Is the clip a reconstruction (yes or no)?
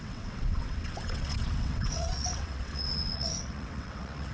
yes